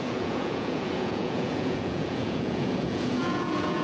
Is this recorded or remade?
remade